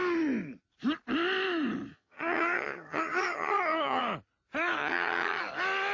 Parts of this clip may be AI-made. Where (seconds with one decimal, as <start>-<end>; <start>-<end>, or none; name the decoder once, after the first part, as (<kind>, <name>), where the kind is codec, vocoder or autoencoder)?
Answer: 1.9-4.0 (vocoder, HiFi-GAN); 4.8-5.4